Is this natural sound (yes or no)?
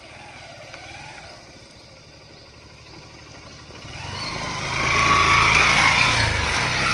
yes